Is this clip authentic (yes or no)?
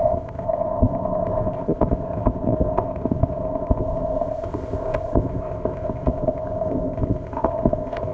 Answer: no